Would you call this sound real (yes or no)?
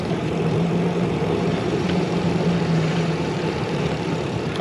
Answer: no